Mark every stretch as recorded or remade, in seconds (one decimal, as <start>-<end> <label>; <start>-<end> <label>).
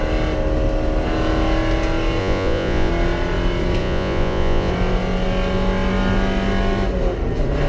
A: 0.0-2.2 recorded; 2.2-2.9 remade; 2.9-3.8 recorded; 3.8-4.7 remade; 4.7-7.7 recorded